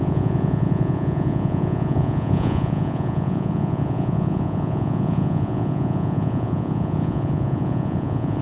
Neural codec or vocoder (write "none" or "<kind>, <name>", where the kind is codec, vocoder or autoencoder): vocoder, Vocos